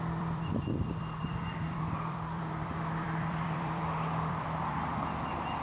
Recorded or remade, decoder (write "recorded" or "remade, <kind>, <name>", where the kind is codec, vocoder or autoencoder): remade, vocoder, BigVGAN v2